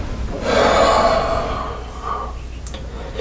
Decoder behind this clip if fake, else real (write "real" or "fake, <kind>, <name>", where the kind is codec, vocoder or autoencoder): real